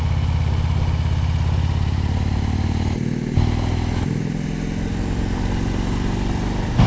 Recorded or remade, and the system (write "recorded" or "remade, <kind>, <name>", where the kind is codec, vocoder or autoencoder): recorded